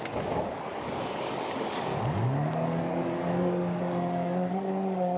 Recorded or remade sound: remade